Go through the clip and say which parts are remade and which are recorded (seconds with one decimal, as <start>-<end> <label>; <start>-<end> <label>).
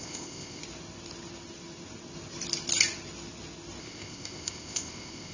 0.0-0.6 remade; 0.6-3.8 recorded; 3.8-5.3 remade